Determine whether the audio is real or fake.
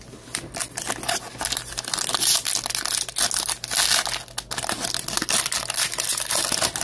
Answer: real